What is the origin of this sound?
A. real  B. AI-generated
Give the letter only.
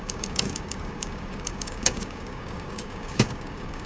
B